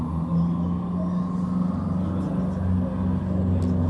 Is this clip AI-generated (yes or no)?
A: no